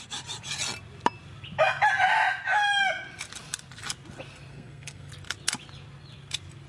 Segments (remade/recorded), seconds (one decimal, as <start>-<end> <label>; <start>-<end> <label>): 0.0-4.5 recorded; 4.5-5.1 remade; 5.1-6.7 recorded